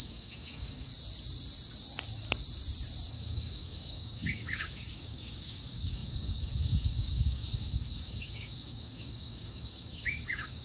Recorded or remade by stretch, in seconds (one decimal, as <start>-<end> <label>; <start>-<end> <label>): 0.0-0.9 remade; 0.9-3.1 recorded; 3.1-10.6 remade